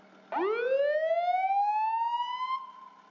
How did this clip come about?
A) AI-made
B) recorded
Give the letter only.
B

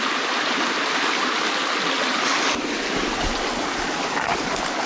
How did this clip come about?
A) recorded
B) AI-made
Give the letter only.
A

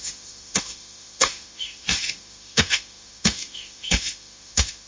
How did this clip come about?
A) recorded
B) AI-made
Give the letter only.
B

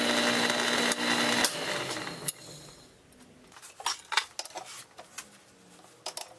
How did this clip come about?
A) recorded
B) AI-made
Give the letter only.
A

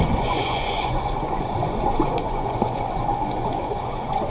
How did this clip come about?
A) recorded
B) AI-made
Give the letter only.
B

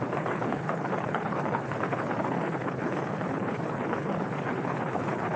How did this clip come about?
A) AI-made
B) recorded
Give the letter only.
A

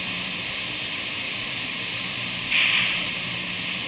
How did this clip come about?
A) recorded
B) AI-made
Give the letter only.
B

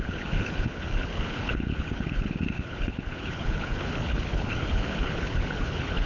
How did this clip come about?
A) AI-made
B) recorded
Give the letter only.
A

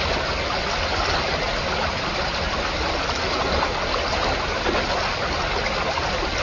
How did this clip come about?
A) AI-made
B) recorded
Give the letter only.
B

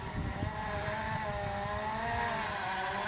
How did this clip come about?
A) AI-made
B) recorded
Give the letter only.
B